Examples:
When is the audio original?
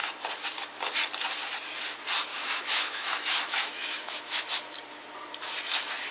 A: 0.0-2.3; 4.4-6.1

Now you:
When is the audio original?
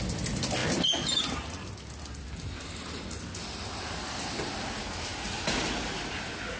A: 0.0-6.6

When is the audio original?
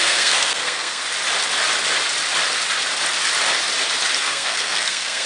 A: 1.0-4.2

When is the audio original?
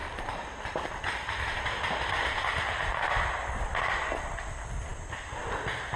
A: 0.0-6.0